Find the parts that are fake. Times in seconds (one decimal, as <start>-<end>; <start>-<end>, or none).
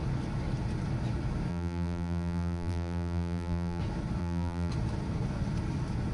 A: 1.5-3.8; 4.2-4.7